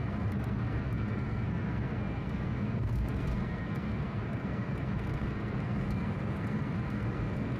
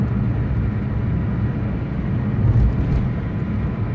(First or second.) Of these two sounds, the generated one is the first